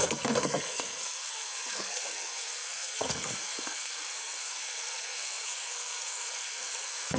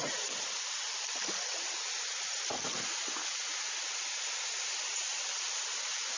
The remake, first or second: first